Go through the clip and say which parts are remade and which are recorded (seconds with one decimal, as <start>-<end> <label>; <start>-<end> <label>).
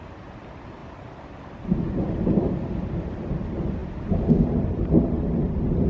0.0-5.9 recorded